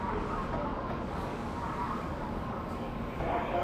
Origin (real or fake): fake